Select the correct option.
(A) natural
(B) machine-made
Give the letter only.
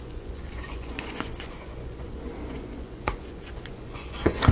B